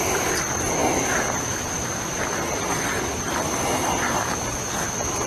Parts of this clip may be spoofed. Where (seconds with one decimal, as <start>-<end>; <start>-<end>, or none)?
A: none